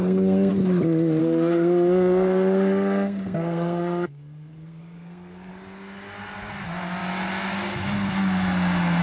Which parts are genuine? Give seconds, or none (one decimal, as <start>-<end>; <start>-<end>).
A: 0.5-1.2; 5.5-9.0